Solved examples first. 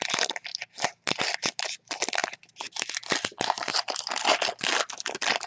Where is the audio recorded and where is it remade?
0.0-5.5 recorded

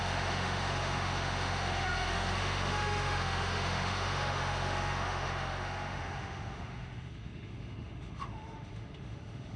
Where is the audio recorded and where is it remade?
0.0-9.6 remade

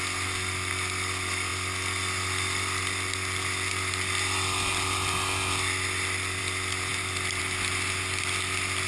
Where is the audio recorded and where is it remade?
0.0-8.9 recorded

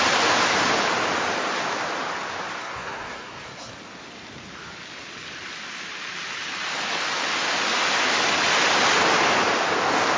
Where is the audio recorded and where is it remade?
0.0-2.6 recorded; 2.6-3.7 remade; 3.7-10.2 recorded

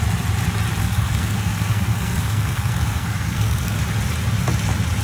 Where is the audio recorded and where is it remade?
0.0-0.8 recorded; 0.8-3.8 remade; 3.8-5.0 recorded

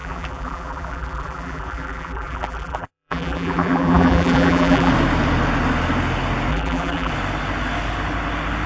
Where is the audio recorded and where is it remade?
0.0-4.9 remade; 4.9-6.5 recorded; 6.5-7.1 remade; 7.1-8.7 recorded

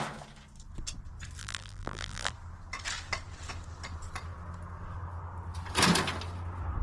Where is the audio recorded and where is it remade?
0.0-1.4 recorded; 1.4-2.3 remade; 2.3-6.8 recorded